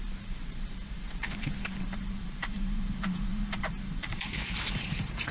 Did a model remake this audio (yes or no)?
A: yes